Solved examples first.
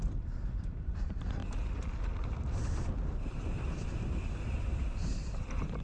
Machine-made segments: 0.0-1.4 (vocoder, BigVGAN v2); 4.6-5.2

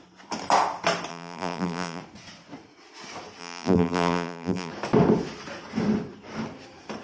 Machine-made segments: 1.1-2.0 (vocoder, BigVGAN v2); 3.4-4.7

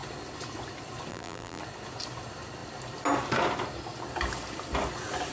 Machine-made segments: 1.1-1.6 (vocoder, BigVGAN v2)

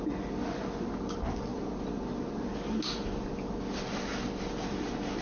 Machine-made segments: none

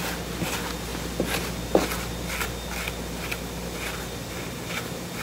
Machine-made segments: none

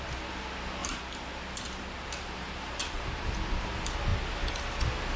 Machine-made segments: 0.8-3.3 (vocoder, BigVGAN v2)